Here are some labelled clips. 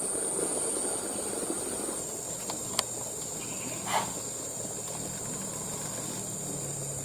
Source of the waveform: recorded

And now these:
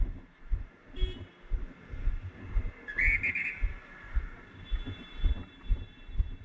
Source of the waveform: recorded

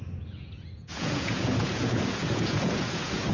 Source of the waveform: remade